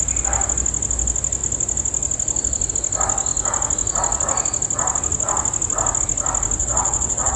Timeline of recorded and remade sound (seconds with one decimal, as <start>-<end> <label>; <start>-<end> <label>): 0.0-6.6 recorded; 6.6-7.4 remade